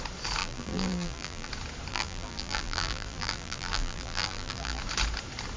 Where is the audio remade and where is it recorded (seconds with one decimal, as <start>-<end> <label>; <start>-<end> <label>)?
0.0-0.4 recorded; 0.4-1.5 remade; 1.5-1.9 recorded; 1.9-4.8 remade; 4.8-5.6 recorded